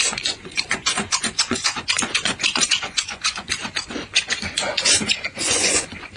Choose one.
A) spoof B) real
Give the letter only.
A